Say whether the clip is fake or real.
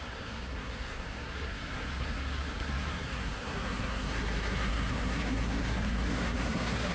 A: fake